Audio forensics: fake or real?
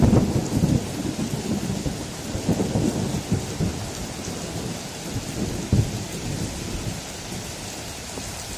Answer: real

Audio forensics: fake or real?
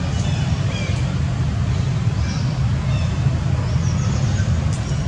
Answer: real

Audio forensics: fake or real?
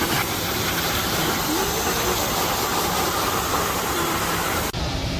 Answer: fake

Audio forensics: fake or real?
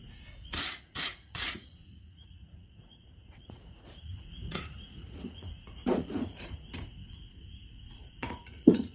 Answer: fake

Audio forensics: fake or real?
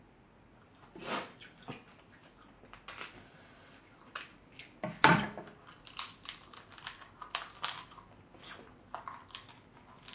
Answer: real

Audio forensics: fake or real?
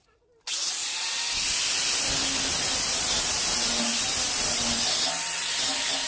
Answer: real